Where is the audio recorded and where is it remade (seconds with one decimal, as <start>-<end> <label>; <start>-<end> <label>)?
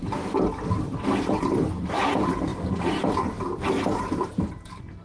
0.0-5.0 recorded